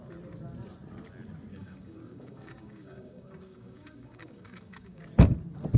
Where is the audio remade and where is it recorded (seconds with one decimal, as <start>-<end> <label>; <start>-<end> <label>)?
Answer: 0.0-1.5 recorded; 1.5-5.0 remade; 5.0-5.8 recorded